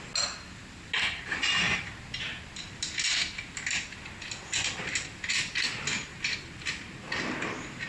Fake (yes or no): no